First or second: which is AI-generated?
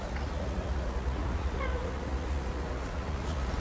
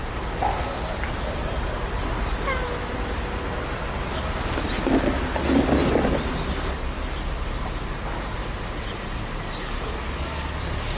first